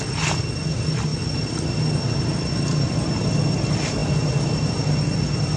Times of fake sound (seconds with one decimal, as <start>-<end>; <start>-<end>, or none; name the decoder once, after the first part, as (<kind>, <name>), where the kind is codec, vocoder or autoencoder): none